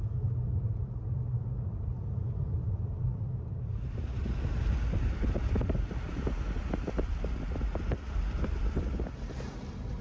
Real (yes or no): yes